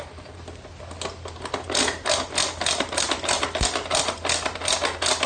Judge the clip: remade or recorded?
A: recorded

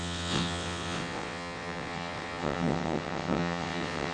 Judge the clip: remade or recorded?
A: remade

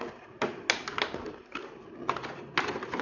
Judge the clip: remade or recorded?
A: recorded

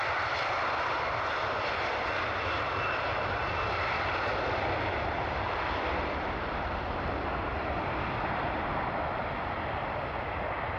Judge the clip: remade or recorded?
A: recorded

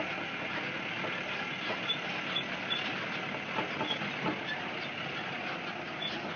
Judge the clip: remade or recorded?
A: recorded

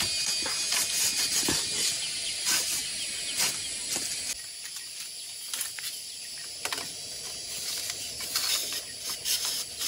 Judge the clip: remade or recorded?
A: recorded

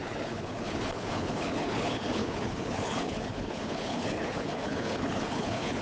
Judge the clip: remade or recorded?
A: remade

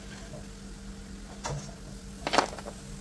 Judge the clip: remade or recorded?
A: recorded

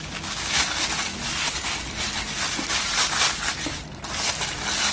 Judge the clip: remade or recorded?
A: recorded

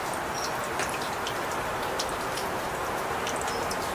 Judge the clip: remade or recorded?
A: recorded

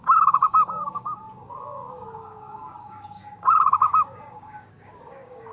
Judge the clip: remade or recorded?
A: remade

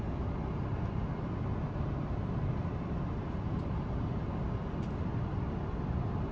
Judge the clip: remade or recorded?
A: recorded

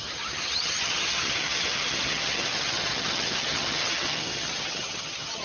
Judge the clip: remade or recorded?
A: remade